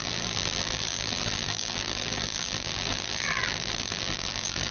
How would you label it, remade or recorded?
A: remade